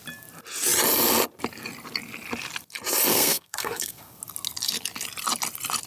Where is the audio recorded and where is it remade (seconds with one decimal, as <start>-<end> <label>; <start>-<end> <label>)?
0.0-3.1 recorded; 3.1-4.2 remade; 4.2-5.9 recorded